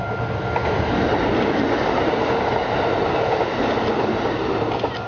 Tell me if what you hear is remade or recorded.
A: recorded